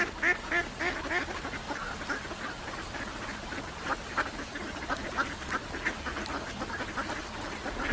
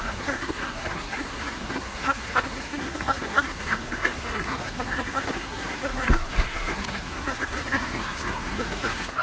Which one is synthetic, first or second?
second